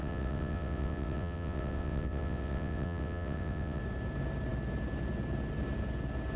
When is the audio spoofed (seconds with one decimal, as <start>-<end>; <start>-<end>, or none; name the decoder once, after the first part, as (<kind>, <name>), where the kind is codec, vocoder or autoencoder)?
0.0-3.8 (vocoder, WaveNeXt)